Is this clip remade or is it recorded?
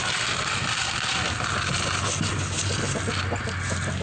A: recorded